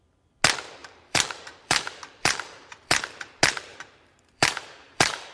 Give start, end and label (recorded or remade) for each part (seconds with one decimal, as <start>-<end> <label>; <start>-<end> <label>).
0.0-0.8 recorded; 0.8-3.0 remade; 3.0-3.7 recorded; 3.7-5.3 remade